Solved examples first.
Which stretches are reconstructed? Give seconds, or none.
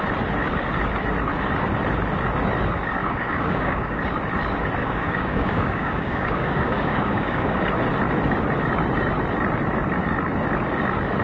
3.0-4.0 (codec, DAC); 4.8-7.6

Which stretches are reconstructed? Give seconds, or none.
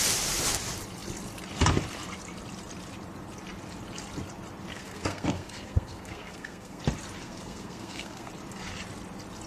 4.7-6.8 (codec, SNAC); 7.2-8.3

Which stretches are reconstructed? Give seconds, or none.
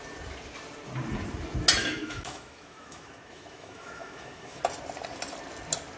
1.8-4.6 (autoencoder, DAC-VAE)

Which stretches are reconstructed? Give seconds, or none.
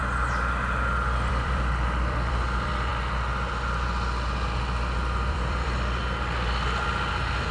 1.3-2.9 (vocoder, BigVGAN v2); 5.3-6.0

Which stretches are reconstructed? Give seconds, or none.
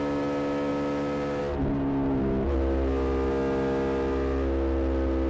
none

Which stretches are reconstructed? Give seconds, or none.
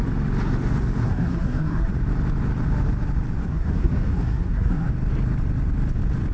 1.0-1.9 (codec, SNAC); 3.4-4.9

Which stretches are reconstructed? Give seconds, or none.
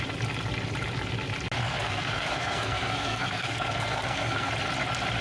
1.6-4.5 (codec, SNAC)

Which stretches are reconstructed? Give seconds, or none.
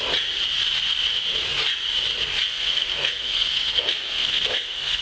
2.5-5.0 (codec, SNAC)